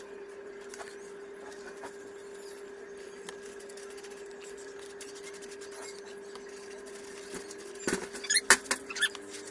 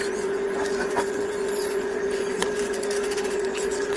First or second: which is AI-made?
second